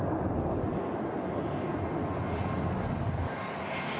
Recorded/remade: recorded